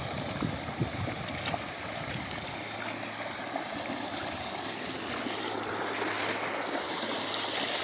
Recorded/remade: recorded